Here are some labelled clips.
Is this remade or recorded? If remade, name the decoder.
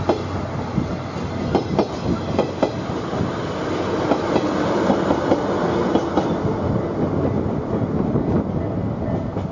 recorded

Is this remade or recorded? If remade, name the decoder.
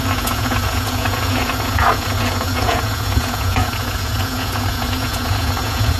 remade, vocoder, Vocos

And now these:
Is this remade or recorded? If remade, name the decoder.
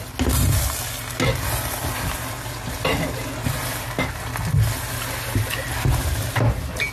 recorded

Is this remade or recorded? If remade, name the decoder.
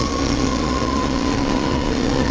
remade, vocoder, Vocos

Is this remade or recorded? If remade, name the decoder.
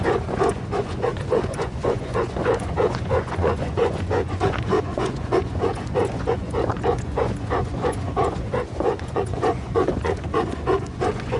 remade, vocoder, Vocos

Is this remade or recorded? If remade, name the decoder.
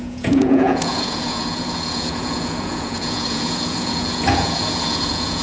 remade, vocoder, Vocos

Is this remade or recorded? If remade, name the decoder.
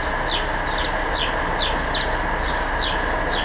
recorded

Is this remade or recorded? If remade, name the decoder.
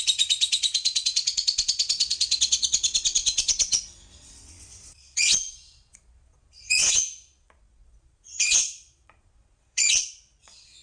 remade, vocoder, Vocos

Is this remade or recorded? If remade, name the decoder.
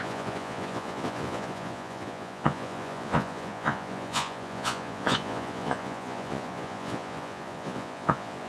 remade, vocoder, Vocos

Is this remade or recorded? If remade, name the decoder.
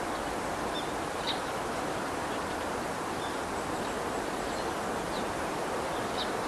recorded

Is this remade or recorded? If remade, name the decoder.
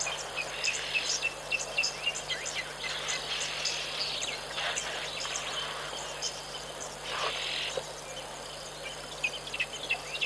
recorded